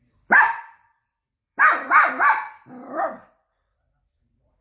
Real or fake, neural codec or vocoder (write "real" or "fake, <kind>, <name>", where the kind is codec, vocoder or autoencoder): fake, vocoder, BigVGAN v2